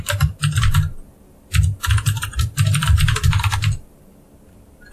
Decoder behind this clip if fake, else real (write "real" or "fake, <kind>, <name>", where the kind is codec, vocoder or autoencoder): fake, vocoder, BigVGAN v2